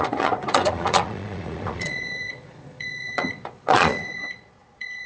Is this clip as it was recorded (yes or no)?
no